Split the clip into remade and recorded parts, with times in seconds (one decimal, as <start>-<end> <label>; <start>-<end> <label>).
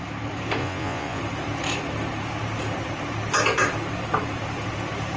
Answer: 0.0-0.6 recorded; 0.6-1.2 remade; 1.2-5.2 recorded